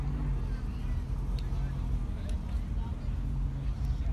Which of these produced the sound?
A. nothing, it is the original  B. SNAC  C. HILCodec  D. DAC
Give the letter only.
A